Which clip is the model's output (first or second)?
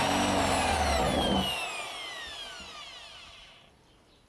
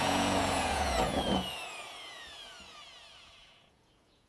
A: second